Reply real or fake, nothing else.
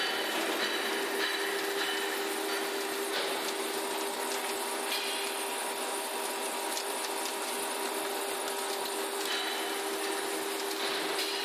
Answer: real